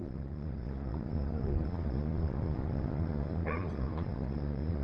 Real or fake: fake